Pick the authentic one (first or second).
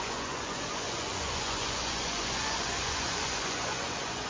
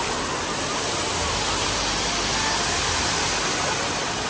second